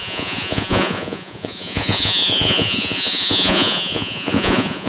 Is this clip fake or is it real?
fake